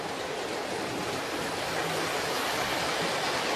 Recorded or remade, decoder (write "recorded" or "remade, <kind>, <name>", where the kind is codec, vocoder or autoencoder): recorded